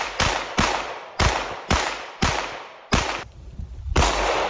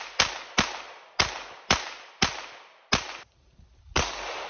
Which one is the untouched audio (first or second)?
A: second